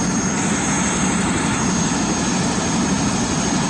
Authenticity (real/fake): real